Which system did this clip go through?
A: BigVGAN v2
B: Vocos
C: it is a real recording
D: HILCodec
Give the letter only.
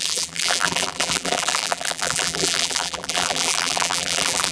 A